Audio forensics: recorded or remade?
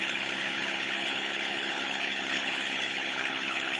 remade